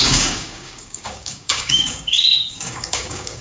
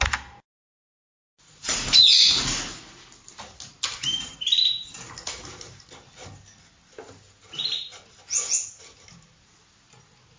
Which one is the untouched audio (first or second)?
second